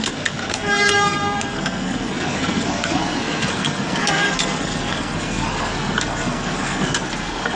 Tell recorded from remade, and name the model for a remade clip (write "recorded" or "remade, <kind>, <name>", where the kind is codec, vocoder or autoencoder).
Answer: remade, codec, SNAC